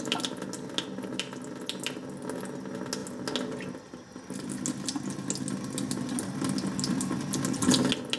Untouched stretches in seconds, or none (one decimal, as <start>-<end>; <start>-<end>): 0.0-8.2